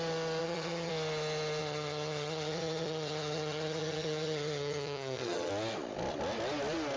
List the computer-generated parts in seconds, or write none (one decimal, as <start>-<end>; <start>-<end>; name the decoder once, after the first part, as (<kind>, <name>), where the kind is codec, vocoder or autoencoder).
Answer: 0.4-0.9 (vocoder, HiFi-GAN); 1.6-5.5

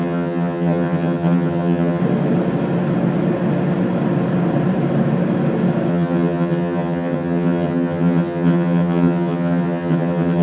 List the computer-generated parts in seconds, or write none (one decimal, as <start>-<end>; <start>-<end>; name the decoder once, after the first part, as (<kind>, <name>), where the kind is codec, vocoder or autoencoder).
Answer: 0.0-2.0 (vocoder, HiFi-GAN); 5.9-10.4

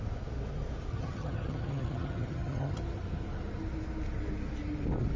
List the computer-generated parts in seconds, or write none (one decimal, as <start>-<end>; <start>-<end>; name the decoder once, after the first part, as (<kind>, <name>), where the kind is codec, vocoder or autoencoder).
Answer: 0.9-2.8 (vocoder, HiFi-GAN)

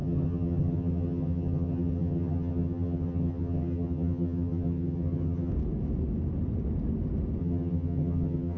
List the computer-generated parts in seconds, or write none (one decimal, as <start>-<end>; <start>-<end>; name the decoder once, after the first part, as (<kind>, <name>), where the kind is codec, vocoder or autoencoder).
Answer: 0.0-5.5 (vocoder, HiFi-GAN); 7.4-8.6

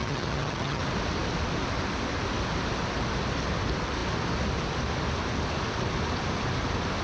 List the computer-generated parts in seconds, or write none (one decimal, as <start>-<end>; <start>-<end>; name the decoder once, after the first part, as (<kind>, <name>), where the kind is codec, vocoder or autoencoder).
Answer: 0.0-0.8 (vocoder, HiFi-GAN)